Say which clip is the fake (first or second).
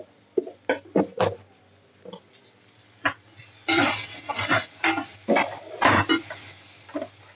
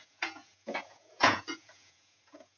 second